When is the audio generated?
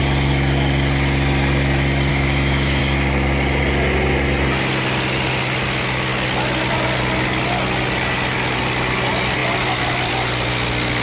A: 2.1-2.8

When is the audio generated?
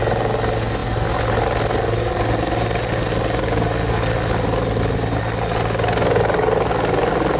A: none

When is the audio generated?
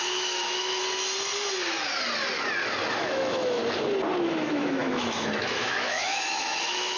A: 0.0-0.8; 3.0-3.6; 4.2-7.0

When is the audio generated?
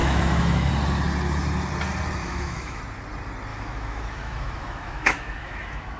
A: 0.0-0.7; 2.2-2.8; 3.5-6.0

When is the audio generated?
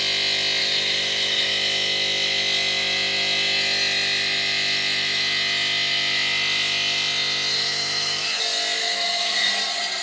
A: 0.6-1.5; 7.5-8.4; 8.8-9.5